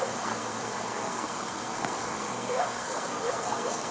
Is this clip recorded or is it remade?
remade